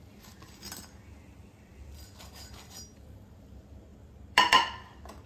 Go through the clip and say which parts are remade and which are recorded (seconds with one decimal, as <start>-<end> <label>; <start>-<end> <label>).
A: 0.0-3.9 recorded; 3.9-4.7 remade; 4.7-5.3 recorded